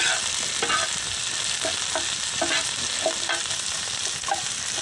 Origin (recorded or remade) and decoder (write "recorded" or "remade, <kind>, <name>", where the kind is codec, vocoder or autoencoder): recorded